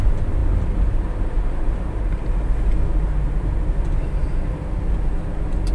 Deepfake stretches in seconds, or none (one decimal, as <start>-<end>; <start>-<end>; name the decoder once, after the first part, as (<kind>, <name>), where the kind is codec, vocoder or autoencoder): 4.2-5.1 (vocoder, BigVGAN v2)